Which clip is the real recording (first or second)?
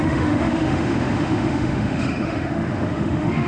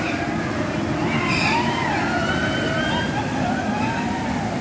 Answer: second